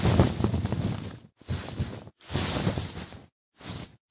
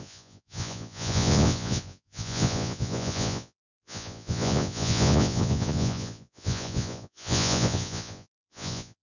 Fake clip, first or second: second